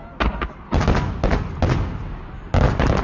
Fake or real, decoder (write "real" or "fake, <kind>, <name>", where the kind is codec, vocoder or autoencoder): real